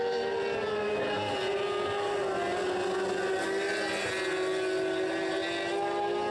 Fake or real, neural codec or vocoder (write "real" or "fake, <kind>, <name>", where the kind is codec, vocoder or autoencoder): real